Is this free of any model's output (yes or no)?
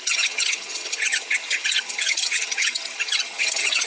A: no